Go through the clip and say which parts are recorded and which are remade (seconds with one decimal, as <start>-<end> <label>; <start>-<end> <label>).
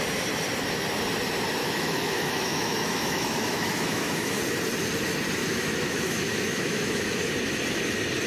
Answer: 0.0-1.6 recorded; 1.6-4.4 remade; 4.4-5.4 recorded; 5.4-7.3 remade; 7.3-8.3 recorded